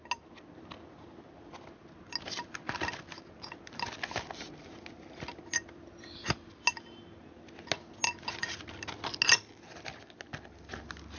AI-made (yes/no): no